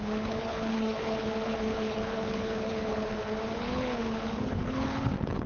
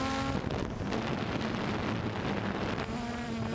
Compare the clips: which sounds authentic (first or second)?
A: second